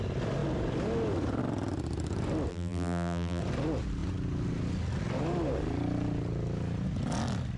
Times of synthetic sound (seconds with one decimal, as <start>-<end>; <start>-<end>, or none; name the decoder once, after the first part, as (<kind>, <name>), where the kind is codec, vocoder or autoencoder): 2.5-3.4 (vocoder, BigVGAN v2)